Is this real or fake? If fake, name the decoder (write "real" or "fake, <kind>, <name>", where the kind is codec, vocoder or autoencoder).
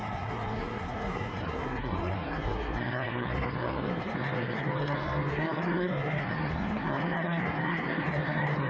fake, codec, SNAC